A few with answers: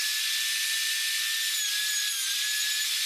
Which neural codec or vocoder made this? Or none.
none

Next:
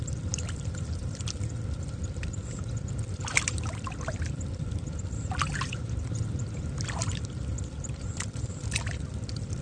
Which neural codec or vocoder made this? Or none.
vocoder, BigVGAN v2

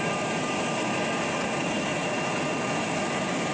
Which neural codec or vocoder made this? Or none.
vocoder, BigVGAN v2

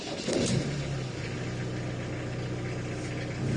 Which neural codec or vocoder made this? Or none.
none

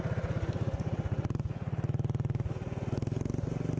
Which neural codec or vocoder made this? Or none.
none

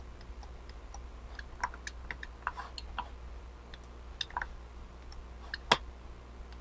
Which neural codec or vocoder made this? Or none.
none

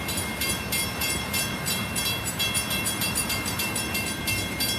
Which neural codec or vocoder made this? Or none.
vocoder, BigVGAN v2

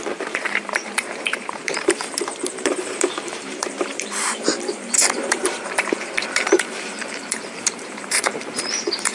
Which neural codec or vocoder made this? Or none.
vocoder, BigVGAN v2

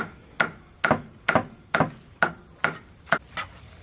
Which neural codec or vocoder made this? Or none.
none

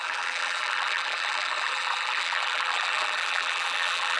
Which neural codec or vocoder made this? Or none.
vocoder, BigVGAN v2